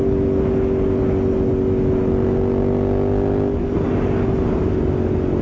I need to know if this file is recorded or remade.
recorded